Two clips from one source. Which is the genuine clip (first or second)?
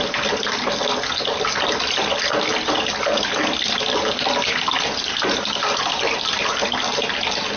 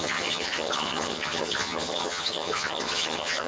first